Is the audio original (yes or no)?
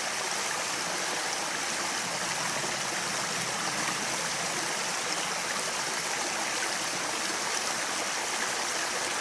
yes